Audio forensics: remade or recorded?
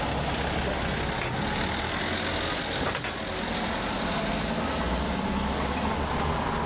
recorded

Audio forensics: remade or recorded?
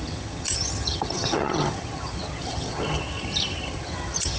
remade